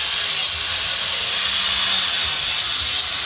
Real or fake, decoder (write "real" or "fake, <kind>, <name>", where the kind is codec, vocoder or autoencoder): real